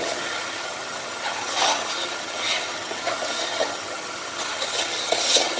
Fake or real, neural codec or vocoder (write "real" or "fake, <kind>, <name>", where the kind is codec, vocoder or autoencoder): fake, vocoder, HiFi-GAN